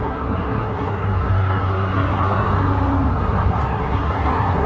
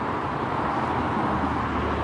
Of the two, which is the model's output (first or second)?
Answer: first